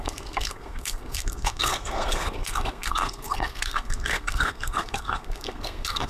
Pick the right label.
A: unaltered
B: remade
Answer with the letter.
B